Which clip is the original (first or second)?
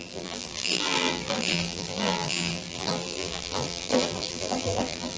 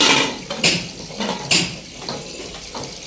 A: second